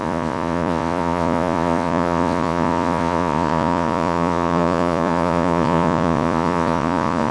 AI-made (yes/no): yes